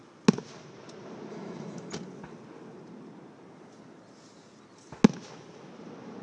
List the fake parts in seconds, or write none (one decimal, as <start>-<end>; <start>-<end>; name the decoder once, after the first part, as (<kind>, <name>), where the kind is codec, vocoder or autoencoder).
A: 1.3-1.9 (autoencoder, DAC-VAE)